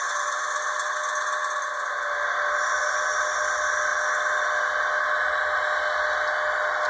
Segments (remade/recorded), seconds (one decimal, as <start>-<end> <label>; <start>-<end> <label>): 0.0-6.9 recorded